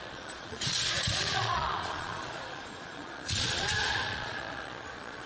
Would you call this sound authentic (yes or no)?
no